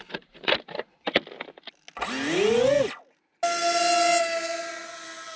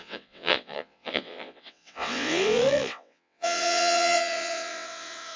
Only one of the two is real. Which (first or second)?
first